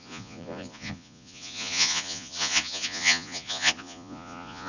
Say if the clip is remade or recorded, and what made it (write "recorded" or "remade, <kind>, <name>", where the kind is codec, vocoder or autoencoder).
remade, vocoder, Vocos